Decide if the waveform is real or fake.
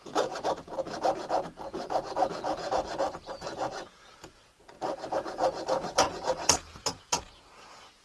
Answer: fake